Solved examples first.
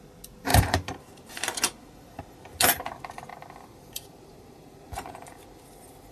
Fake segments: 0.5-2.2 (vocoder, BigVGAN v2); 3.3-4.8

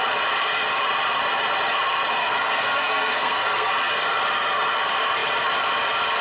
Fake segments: 2.2-3.7 (codec, SNAC)

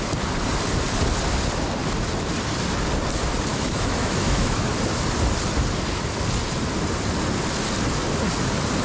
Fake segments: 3.5-4.7 (autoencoder, DAC-VAE)

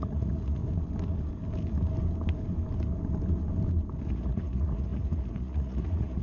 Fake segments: 0.0-0.6 (vocoder, Vocos); 4.1-6.2

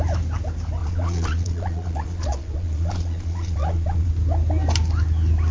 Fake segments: 0.8-4.1 (vocoder, Vocos)